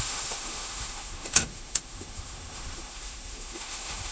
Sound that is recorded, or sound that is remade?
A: remade